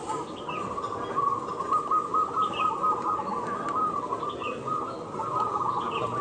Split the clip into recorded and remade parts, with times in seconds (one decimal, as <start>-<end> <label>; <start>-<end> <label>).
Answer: 0.0-6.2 recorded